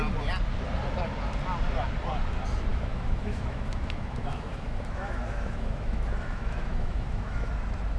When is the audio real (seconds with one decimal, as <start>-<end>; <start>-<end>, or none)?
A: 0.0-2.7; 7.5-8.0